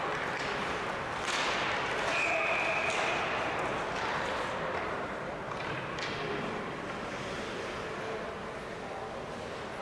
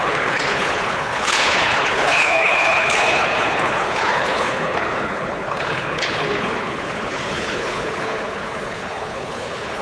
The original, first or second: first